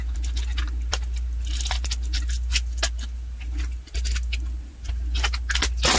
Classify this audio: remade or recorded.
recorded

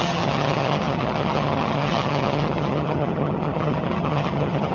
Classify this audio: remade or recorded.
remade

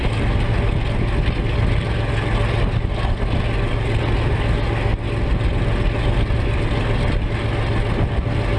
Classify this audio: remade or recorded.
recorded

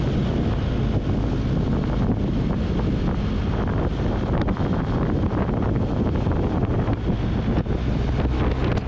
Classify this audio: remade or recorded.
recorded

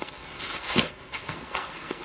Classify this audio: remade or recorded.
remade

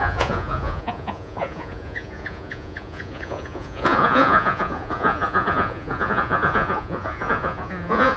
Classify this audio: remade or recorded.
remade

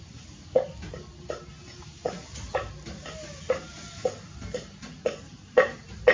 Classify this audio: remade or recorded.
recorded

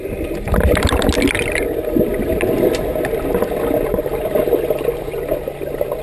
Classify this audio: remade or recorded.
recorded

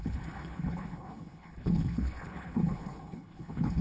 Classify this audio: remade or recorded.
remade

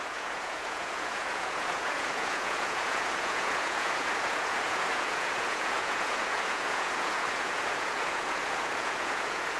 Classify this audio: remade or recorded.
remade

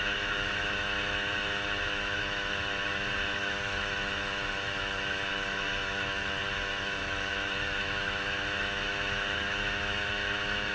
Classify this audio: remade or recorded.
remade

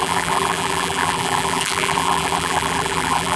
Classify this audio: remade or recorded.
remade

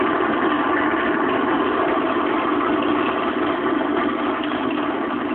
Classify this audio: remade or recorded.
recorded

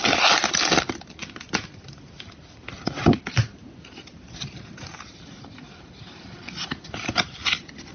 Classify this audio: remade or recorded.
recorded